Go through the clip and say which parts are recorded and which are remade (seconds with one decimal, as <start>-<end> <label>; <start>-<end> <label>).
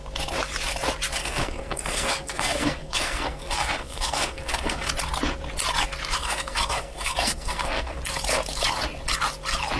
0.0-1.2 recorded; 1.2-4.9 remade; 4.9-6.2 recorded; 6.2-8.0 remade; 8.0-9.8 recorded